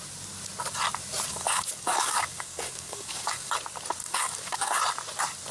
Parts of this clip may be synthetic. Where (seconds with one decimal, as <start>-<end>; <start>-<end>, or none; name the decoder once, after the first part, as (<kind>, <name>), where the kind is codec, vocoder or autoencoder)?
1.3-3.5 (codec, DAC); 4.0-4.8